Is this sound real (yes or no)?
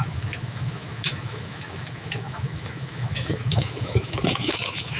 no